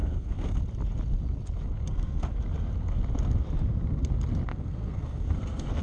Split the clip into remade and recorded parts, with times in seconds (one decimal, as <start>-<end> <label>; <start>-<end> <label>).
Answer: 0.0-0.6 remade; 0.6-1.8 recorded; 1.8-2.3 remade; 2.3-4.5 recorded; 4.5-5.8 remade